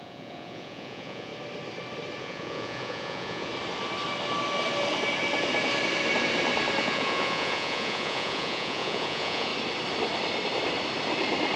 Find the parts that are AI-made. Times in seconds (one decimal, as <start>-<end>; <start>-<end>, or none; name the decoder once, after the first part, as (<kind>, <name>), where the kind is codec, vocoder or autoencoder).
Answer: 0.0-1.3 (vocoder, Vocos); 2.2-3.5; 6.8-9.5